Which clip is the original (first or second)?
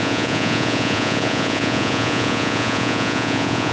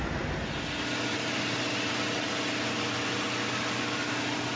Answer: second